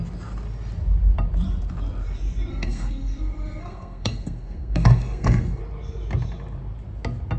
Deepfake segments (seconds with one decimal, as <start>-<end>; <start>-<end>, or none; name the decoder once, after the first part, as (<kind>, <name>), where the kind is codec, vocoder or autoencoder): 2.5-5.6 (codec, SNAC)